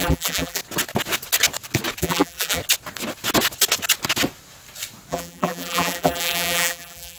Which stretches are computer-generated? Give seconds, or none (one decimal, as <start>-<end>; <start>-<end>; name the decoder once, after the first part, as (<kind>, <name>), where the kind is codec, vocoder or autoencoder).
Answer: 0.0-0.6 (vocoder, BigVGAN v2); 2.0-2.6; 5.1-7.2